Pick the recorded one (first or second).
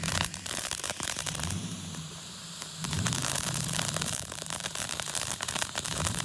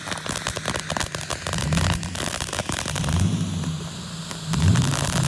second